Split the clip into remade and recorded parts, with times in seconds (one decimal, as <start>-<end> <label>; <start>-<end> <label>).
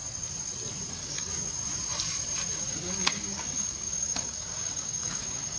0.0-0.9 recorded; 0.9-1.3 remade; 1.3-2.7 recorded; 2.7-5.6 remade